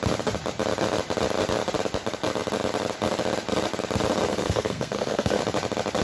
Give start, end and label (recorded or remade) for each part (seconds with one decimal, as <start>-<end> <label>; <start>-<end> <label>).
0.0-4.3 recorded; 4.3-5.4 remade; 5.4-6.0 recorded